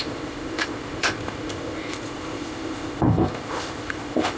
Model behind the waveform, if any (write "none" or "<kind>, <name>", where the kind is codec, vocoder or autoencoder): codec, ZipCodec